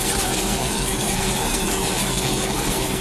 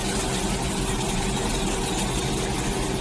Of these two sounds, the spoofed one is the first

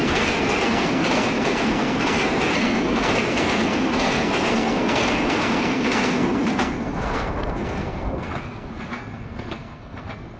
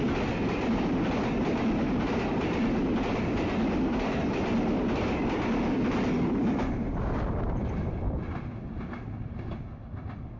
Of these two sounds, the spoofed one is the first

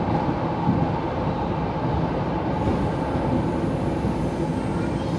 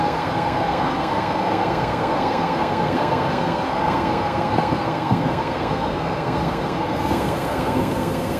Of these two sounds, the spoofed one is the second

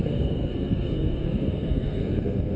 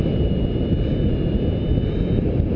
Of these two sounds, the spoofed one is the first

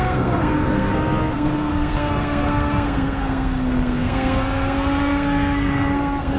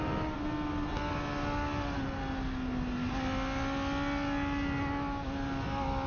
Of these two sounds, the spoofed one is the first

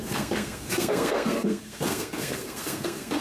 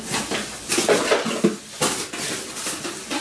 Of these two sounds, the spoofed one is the first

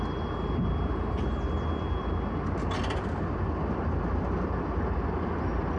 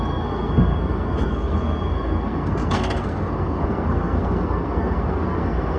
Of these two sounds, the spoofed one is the second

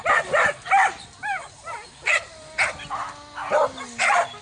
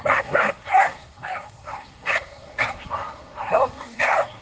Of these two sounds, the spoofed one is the second